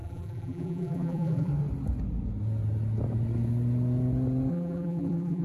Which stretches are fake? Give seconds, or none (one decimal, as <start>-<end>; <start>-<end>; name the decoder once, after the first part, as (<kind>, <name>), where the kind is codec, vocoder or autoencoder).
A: 0.0-1.5 (vocoder, BigVGAN v2); 4.5-5.4